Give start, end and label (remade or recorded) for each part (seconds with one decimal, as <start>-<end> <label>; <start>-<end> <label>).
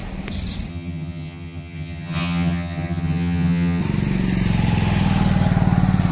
0.0-0.7 recorded; 0.7-3.8 remade; 3.8-6.1 recorded